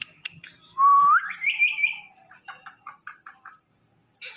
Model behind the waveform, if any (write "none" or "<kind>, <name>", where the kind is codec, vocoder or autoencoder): vocoder, BigVGAN v2